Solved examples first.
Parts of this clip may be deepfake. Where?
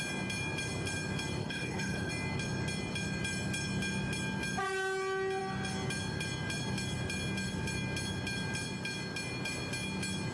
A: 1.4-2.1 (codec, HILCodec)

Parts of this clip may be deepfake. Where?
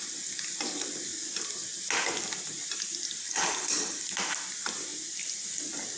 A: 3.2-4.0 (codec, HILCodec)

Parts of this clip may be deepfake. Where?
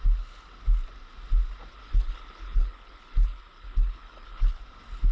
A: 1.7-4.6 (codec, HILCodec)